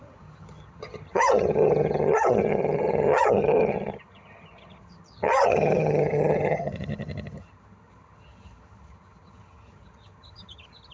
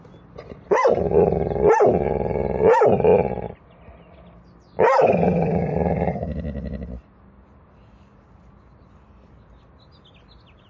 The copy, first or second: first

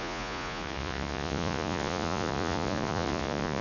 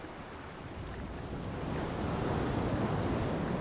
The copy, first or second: first